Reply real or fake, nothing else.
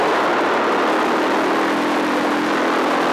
real